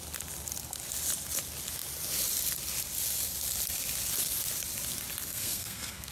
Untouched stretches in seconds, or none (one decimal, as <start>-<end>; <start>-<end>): 0.0-5.3